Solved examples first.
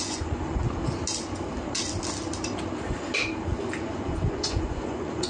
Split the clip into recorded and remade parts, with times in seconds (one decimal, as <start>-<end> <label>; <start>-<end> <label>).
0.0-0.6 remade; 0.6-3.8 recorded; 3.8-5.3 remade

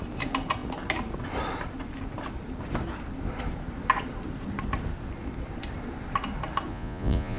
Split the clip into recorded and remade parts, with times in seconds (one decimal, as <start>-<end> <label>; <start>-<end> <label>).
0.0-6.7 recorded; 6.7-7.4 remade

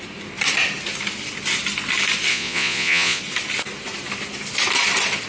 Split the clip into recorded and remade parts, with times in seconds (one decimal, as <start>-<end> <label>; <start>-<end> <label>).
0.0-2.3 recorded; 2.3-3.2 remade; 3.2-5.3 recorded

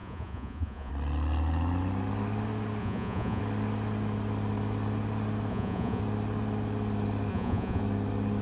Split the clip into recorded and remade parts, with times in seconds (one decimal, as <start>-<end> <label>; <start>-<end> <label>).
0.0-0.9 remade; 0.9-2.8 recorded; 2.8-3.4 remade; 3.4-5.5 recorded; 5.5-6.0 remade; 6.0-7.3 recorded; 7.3-7.8 remade; 7.8-8.4 recorded

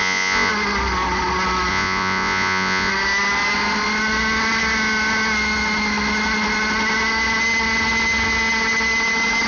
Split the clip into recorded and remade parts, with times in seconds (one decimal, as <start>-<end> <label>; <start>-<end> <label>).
0.0-0.5 remade; 0.5-1.7 recorded; 1.7-2.9 remade; 2.9-9.5 recorded

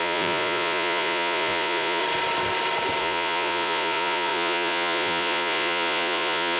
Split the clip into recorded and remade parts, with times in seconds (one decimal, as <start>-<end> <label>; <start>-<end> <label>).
0.0-2.0 remade; 2.0-3.0 recorded; 3.0-6.6 remade

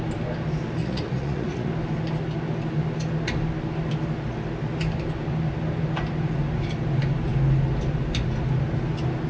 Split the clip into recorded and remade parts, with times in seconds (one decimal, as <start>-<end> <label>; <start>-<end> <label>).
0.0-0.8 recorded; 0.8-1.7 remade; 1.7-9.3 recorded